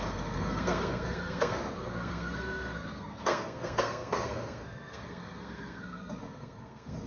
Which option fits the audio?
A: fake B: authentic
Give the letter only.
A